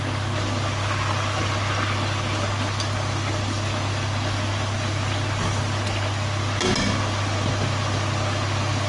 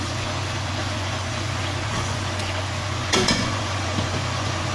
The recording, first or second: first